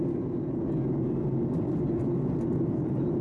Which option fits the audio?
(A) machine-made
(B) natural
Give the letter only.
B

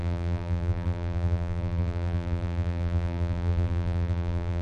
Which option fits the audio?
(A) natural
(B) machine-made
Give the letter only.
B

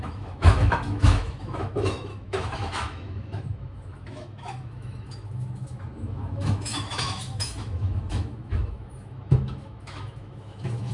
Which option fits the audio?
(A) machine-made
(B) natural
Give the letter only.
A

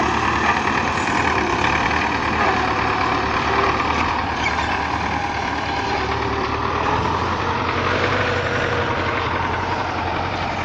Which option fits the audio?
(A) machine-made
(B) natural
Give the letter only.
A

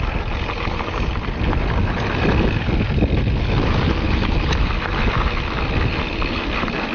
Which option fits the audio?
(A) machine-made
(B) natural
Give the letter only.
B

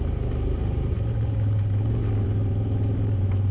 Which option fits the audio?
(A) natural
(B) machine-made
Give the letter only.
B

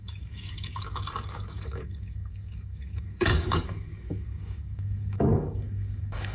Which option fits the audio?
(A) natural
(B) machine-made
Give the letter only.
B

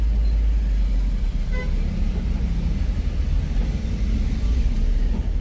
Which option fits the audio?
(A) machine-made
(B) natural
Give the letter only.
B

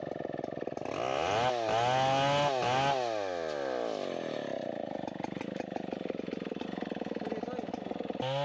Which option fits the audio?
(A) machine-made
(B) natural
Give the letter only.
B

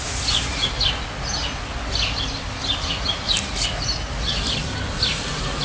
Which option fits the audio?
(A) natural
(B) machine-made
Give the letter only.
A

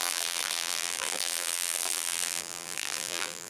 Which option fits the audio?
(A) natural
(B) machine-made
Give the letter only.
B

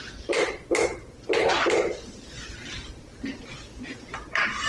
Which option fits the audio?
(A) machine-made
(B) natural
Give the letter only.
A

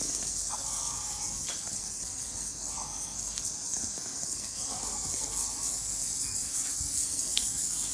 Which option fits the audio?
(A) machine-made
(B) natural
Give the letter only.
A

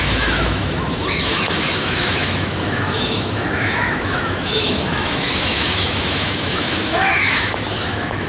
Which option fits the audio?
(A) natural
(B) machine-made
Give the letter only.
B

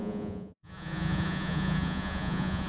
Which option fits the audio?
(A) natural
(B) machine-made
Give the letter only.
B